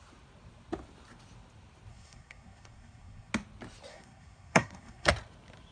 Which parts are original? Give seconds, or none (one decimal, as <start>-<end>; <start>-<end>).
0.0-1.9; 3.3-3.9; 5.1-5.7